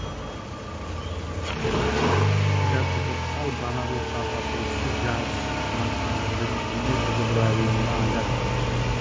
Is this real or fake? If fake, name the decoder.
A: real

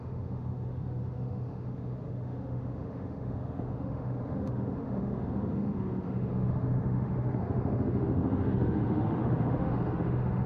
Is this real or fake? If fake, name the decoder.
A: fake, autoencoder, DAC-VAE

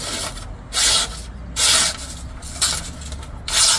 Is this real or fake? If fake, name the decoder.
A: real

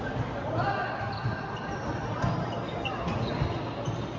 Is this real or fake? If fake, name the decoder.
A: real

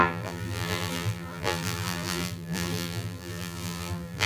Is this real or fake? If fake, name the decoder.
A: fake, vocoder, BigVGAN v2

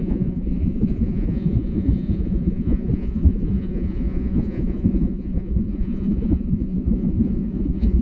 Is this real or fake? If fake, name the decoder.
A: fake, vocoder, Vocos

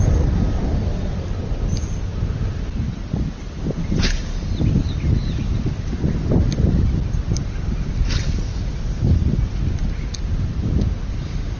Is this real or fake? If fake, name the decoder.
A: real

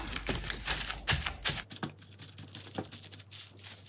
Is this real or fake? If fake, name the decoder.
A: real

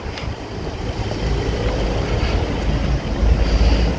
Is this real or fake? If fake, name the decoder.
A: real